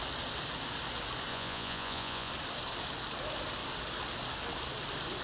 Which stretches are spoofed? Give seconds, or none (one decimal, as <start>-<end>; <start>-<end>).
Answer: 1.3-2.3